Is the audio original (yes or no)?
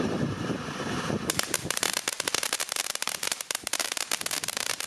no